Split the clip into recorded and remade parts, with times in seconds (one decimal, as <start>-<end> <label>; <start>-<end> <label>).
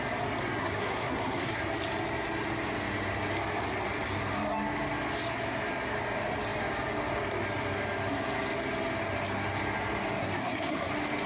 0.0-0.6 recorded; 0.6-1.6 remade; 1.6-10.2 recorded; 10.2-10.9 remade; 10.9-11.3 recorded